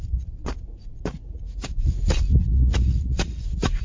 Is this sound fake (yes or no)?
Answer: yes